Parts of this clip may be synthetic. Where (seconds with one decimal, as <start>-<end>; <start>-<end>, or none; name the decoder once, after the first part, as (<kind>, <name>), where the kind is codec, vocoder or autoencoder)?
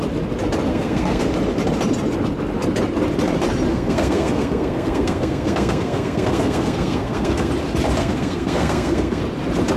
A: 0.7-1.3 (codec, SNAC); 3.7-7.5; 8.0-9.2